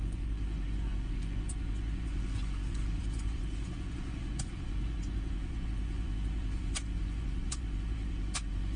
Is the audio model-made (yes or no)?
yes